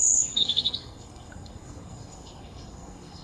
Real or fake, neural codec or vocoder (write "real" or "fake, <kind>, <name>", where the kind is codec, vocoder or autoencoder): fake, codec, SNAC